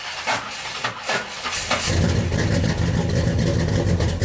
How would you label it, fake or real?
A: real